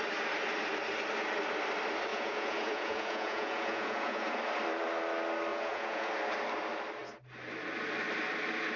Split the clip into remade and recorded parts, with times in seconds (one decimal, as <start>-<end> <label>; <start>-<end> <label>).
0.0-2.1 recorded; 2.1-4.4 remade; 4.4-5.5 recorded; 5.5-6.1 remade; 6.1-8.8 recorded